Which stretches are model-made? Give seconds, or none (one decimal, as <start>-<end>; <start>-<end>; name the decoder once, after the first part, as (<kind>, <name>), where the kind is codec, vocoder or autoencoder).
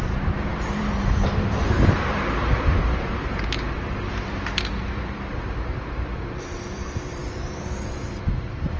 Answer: 0.0-8.8 (vocoder, BigVGAN v2)